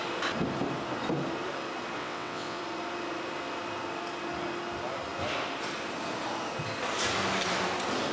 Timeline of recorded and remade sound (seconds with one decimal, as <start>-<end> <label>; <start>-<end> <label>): 0.0-2.0 recorded; 2.0-2.6 remade; 2.6-8.1 recorded